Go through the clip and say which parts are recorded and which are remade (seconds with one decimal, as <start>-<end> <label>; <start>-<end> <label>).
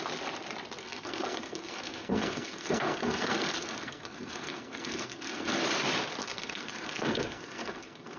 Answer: 0.0-0.8 recorded; 0.8-5.6 remade; 5.6-6.2 recorded; 6.2-8.2 remade